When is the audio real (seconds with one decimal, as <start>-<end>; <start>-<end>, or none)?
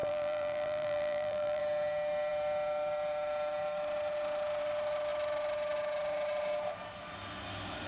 1.6-7.9